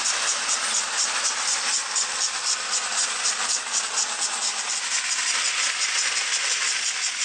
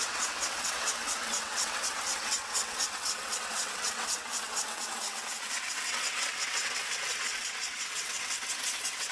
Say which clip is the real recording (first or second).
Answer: first